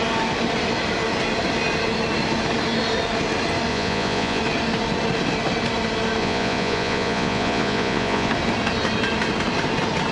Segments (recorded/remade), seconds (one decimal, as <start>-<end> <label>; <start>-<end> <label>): 0.0-3.7 recorded; 3.7-4.4 remade; 4.4-6.2 recorded; 6.2-8.3 remade; 8.3-10.1 recorded